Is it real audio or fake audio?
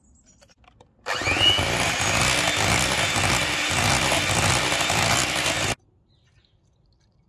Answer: real